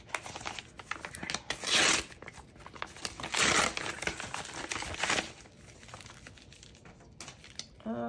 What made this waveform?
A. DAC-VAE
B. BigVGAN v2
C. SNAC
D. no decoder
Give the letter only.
D